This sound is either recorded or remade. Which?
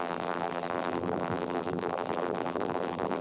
remade